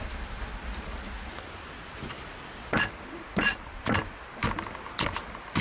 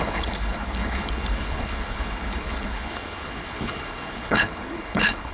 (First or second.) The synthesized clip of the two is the second